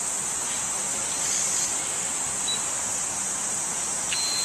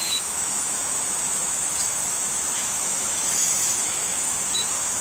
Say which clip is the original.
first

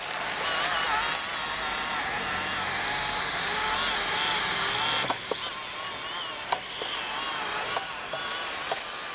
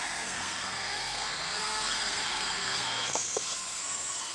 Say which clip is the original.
first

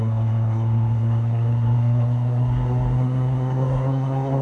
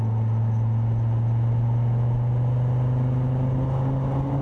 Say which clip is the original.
second